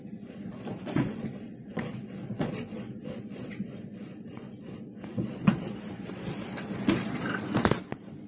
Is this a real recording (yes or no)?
no